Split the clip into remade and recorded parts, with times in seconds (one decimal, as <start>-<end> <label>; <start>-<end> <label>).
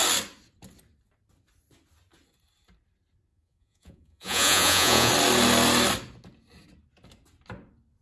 0.0-3.3 recorded; 3.3-5.1 remade; 5.1-8.0 recorded